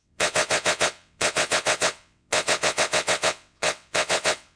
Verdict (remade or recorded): remade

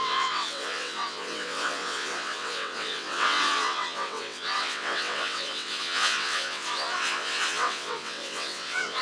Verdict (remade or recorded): remade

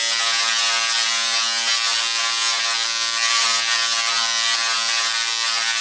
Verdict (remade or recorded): recorded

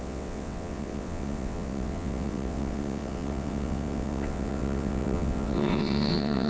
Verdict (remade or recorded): remade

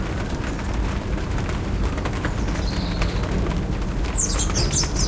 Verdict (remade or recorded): recorded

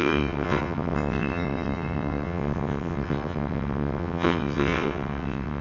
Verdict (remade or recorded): remade